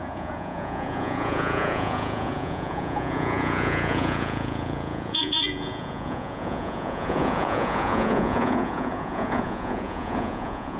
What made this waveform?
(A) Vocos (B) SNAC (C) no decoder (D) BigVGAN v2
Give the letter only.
A